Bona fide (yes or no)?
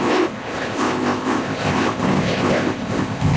no